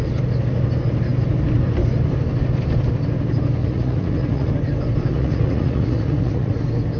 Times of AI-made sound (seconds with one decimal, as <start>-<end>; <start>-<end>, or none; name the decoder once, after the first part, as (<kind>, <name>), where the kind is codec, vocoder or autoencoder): 3.6-4.5 (vocoder, Vocos); 5.1-6.5